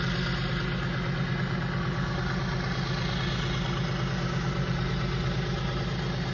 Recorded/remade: recorded